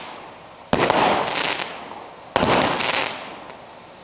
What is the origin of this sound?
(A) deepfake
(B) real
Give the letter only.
B